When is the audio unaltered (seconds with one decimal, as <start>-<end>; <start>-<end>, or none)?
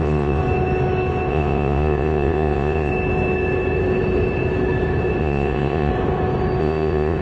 0.4-1.3; 2.9-5.2; 5.9-6.6